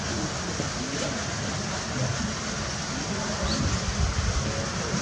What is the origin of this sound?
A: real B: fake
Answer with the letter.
A